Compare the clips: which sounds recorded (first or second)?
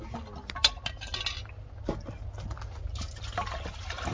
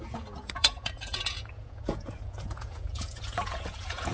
first